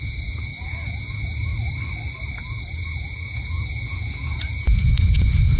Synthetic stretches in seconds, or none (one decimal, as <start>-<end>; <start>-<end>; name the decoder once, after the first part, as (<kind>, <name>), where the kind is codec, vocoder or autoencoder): 0.0-1.5 (vocoder, Vocos); 2.4-5.6